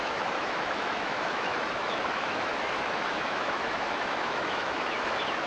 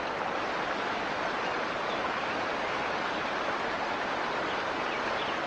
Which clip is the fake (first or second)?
first